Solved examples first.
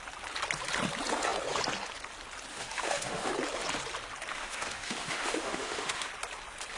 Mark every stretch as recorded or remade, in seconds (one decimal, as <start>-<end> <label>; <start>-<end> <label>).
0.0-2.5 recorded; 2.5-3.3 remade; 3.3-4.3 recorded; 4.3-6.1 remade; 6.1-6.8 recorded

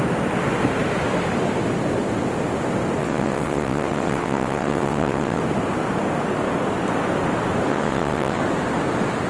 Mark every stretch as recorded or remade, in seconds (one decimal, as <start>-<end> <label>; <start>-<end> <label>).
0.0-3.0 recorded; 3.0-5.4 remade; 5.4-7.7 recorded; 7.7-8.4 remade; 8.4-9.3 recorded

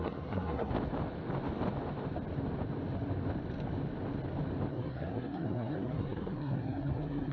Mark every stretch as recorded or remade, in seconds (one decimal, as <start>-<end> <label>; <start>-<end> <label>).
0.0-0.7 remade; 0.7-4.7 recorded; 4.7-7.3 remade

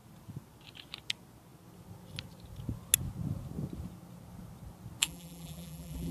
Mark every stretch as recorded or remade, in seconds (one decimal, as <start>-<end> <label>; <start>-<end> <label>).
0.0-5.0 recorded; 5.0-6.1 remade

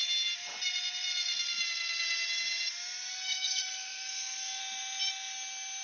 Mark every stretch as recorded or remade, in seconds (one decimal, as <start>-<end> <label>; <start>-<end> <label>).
0.0-3.1 recorded; 3.1-4.6 remade; 4.6-5.8 recorded

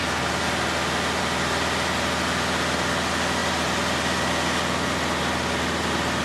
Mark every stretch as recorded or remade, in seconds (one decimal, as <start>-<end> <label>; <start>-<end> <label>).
0.0-6.2 recorded

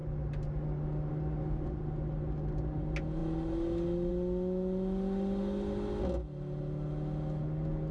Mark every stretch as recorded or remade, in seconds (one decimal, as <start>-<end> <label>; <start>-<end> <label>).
0.0-7.9 recorded

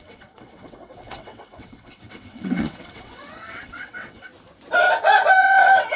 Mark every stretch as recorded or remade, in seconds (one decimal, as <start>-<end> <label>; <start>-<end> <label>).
0.0-4.3 remade; 4.3-5.4 recorded; 5.4-6.0 remade